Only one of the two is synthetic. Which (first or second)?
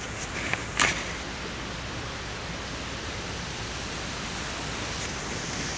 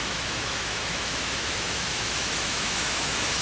second